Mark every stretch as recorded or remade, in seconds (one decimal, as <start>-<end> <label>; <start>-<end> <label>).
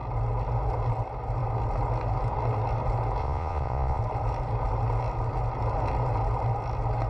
0.0-3.2 recorded; 3.2-4.0 remade; 4.0-7.1 recorded